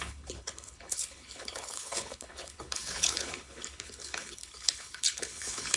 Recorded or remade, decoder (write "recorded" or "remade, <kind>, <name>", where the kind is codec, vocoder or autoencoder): remade, codec, HILCodec